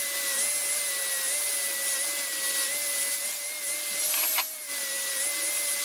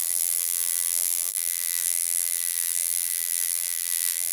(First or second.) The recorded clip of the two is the first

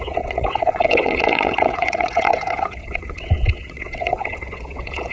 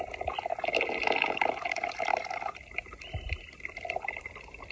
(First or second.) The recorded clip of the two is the second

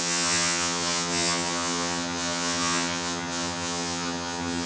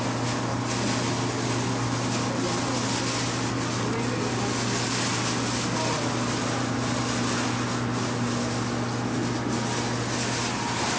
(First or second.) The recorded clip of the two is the second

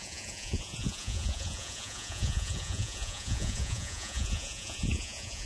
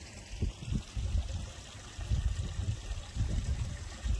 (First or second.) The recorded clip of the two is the second